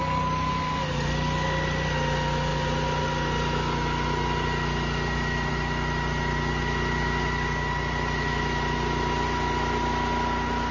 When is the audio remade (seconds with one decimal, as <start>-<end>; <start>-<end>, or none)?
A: 0.0-0.5